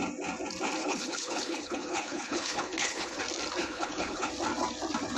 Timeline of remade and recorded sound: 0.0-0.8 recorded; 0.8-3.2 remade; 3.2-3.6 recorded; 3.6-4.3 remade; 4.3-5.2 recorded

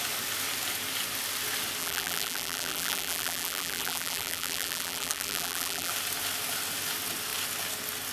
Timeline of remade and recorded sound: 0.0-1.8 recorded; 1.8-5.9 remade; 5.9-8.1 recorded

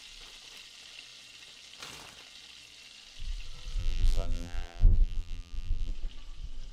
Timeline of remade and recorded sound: 0.0-3.8 recorded; 3.8-5.9 remade; 5.9-6.7 recorded

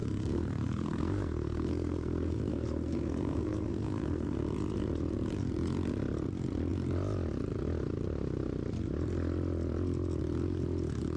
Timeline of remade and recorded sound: 0.0-4.4 remade; 4.4-11.2 recorded

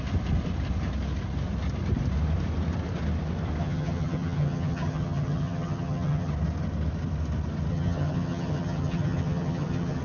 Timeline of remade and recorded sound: 0.0-3.6 recorded; 3.6-6.3 remade; 6.3-7.7 recorded; 7.7-10.0 remade